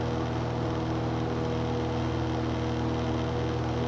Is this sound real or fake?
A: real